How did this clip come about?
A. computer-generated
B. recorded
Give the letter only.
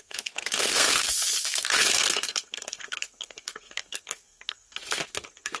A